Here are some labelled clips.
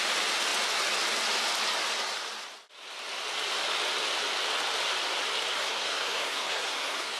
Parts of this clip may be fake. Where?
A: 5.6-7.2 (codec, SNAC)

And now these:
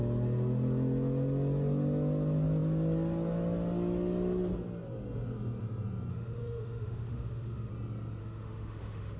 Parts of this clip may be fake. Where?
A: 6.1-7.7 (autoencoder, DAC-VAE); 8.2-9.2